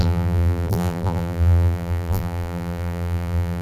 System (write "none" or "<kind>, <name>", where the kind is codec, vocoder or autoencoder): vocoder, BigVGAN v2